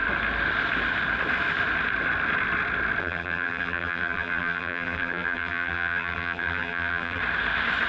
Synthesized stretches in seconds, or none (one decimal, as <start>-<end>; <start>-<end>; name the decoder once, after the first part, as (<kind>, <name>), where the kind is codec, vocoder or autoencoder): 3.0-7.2 (vocoder, BigVGAN v2)